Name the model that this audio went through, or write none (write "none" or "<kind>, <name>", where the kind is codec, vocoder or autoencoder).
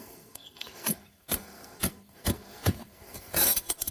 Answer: codec, SNAC